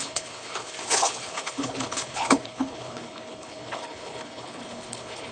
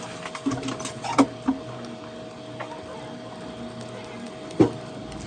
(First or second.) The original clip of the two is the second